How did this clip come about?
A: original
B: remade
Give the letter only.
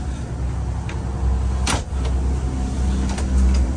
A